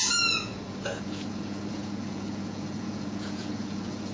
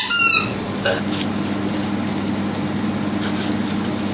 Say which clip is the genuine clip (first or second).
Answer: second